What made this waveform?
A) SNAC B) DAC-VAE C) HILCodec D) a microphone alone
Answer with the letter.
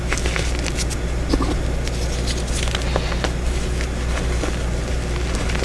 D